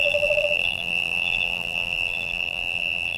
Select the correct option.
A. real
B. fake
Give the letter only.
B